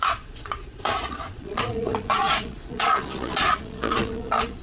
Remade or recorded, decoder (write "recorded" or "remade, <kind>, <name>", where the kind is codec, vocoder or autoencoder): remade, vocoder, Vocos